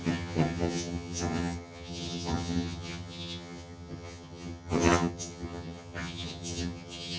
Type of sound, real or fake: fake